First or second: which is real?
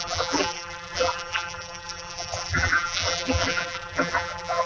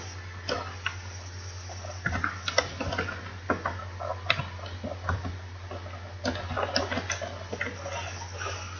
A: second